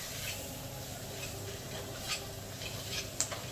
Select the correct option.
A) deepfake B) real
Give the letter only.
B